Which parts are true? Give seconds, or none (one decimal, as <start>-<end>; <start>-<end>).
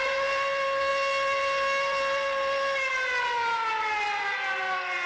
0.0-5.1